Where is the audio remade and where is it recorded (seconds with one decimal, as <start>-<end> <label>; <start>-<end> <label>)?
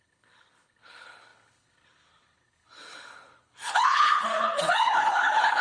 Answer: 0.0-5.6 remade